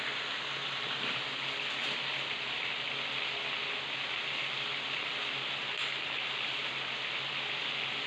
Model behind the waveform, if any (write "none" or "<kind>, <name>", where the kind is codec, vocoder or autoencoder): none